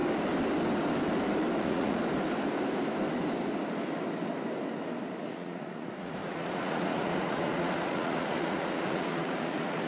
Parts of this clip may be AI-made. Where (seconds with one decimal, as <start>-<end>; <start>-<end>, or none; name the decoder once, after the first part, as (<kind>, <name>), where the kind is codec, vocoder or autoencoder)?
1.6-2.0 (vocoder, Vocos); 5.2-9.9